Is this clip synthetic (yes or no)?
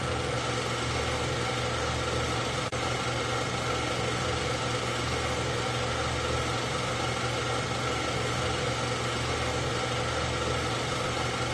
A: no